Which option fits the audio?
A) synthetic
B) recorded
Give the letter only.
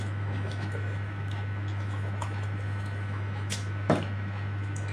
A